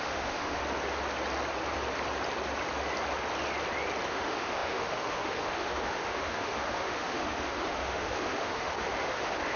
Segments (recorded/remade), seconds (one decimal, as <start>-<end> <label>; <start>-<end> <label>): 0.0-0.6 remade; 0.6-4.1 recorded; 4.1-9.6 remade

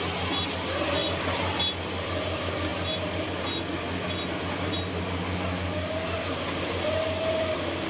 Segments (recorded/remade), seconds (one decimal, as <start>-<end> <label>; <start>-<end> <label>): 0.0-7.9 recorded

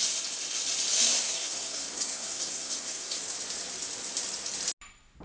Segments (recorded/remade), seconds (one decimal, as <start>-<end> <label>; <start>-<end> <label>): 0.0-1.1 recorded; 1.1-3.2 remade; 3.2-5.2 recorded

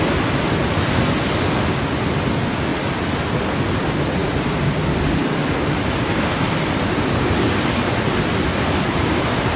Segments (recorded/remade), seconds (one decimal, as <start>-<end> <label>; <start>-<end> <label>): 0.0-8.5 recorded; 8.5-9.6 remade

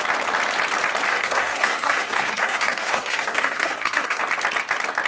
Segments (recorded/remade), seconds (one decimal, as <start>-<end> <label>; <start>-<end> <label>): 0.0-1.1 recorded; 1.1-4.2 remade; 4.2-5.1 recorded